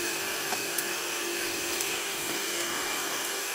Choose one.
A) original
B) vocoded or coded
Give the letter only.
B